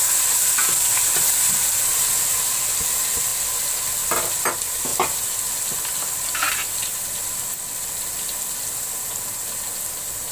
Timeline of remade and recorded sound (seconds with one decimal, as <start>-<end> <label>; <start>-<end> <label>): 0.0-10.3 recorded